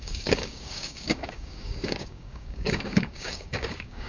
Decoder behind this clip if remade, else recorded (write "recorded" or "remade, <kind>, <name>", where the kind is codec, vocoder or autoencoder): remade, codec, DAC